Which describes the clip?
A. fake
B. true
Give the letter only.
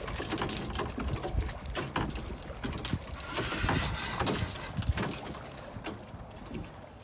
B